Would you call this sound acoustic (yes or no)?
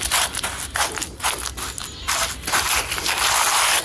yes